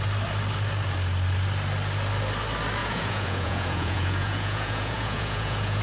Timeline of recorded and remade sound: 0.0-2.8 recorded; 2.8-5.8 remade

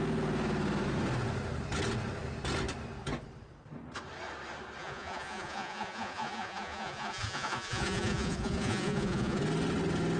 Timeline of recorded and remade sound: 0.0-4.8 recorded; 4.8-9.4 remade; 9.4-10.2 recorded

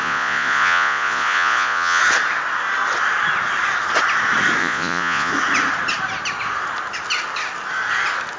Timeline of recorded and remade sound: 0.0-2.0 remade; 2.0-4.6 recorded; 4.6-5.3 remade; 5.3-8.4 recorded

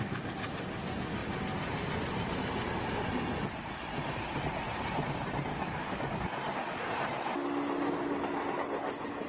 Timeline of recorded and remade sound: 0.0-5.5 recorded; 5.5-6.2 remade; 6.2-9.3 recorded

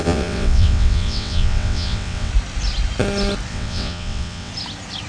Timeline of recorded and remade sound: 0.0-2.3 remade; 2.3-3.5 recorded; 3.5-4.5 remade; 4.5-5.1 recorded